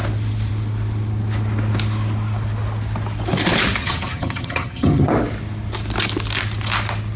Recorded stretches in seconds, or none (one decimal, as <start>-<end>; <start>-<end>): 0.0-3.8; 5.1-7.2